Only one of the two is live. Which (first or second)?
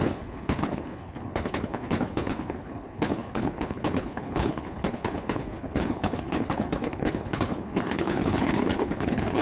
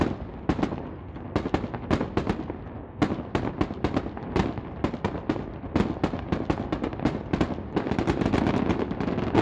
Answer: second